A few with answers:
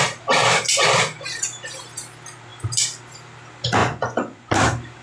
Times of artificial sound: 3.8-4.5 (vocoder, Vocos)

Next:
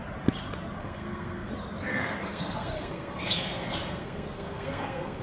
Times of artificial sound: 0.8-1.5 (codec, SNAC); 1.9-5.2

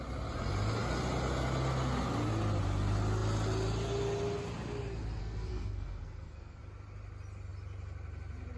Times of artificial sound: 5.2-6.6 (codec, SNAC)

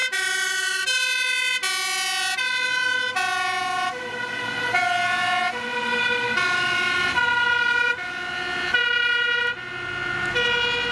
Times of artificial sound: 0.0-1.0 (vocoder, BigVGAN v2); 5.7-8.1; 8.8-9.4